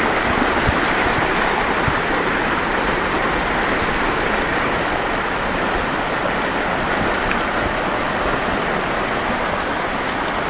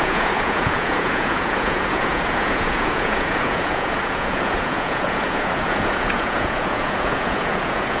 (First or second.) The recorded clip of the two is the first